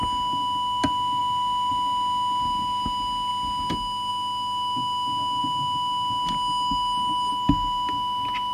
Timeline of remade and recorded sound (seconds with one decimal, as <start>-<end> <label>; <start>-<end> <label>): 0.0-8.5 recorded

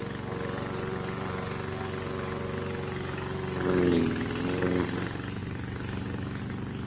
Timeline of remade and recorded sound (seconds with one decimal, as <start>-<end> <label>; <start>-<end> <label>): 0.0-6.9 recorded

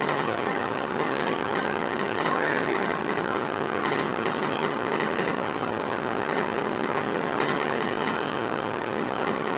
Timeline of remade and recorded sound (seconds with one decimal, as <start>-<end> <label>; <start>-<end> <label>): 0.0-9.6 remade

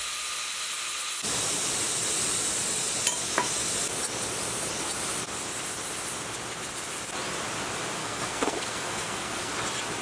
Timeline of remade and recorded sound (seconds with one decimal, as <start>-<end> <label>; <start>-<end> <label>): 0.0-8.0 recorded; 8.0-9.5 remade; 9.5-10.0 recorded

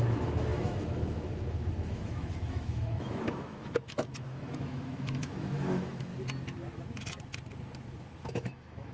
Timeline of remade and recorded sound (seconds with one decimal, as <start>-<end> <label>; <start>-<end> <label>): 0.0-6.1 remade; 6.1-8.3 recorded; 8.3-8.9 remade

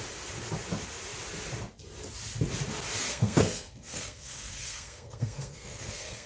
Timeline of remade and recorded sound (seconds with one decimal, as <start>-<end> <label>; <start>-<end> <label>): 0.0-3.1 recorded; 3.1-6.3 remade

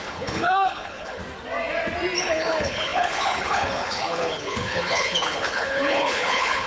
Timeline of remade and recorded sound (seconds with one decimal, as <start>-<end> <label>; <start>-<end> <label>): 0.0-1.2 remade; 1.2-2.2 recorded; 2.2-6.7 remade

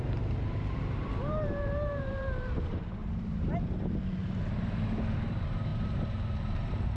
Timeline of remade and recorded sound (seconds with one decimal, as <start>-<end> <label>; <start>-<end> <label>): 0.0-3.0 remade; 3.0-5.2 recorded; 5.2-7.0 remade